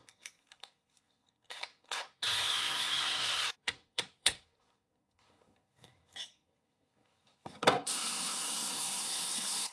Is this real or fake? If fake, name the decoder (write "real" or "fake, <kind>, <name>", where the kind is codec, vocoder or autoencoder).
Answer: fake, codec, SNAC